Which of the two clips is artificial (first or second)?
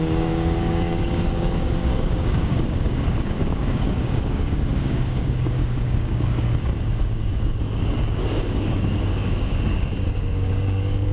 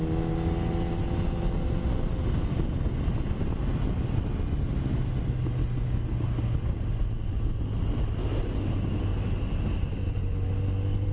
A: first